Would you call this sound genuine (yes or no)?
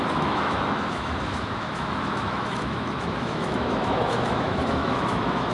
no